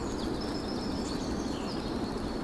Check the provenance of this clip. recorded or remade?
recorded